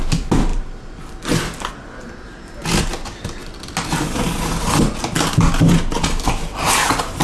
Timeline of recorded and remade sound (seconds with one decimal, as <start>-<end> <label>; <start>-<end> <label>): 0.0-7.2 recorded